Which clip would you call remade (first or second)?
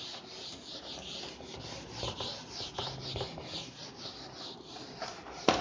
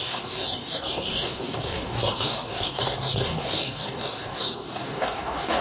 second